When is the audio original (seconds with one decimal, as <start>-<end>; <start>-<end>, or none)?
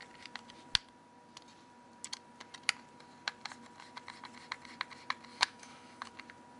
0.0-5.3; 6.1-6.6